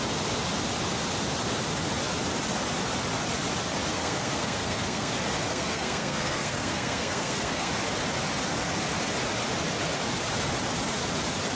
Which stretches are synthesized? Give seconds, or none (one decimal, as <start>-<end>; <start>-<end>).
3.9-5.1; 5.5-7.7